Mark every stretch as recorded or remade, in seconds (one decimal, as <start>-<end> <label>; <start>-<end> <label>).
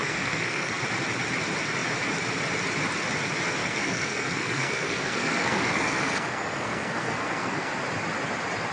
0.0-0.8 remade; 0.8-3.6 recorded; 3.6-7.7 remade; 7.7-8.7 recorded